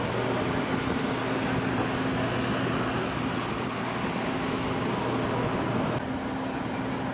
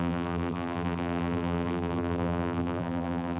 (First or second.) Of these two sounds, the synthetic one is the second